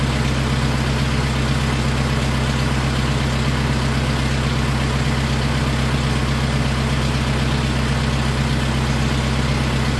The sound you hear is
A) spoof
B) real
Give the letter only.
B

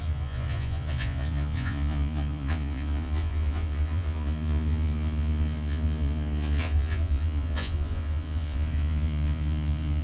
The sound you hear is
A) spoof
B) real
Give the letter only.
A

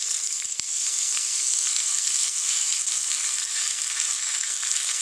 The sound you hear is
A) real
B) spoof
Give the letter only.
B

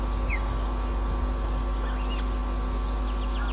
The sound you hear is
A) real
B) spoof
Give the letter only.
A